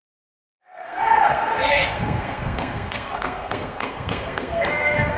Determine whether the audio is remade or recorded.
remade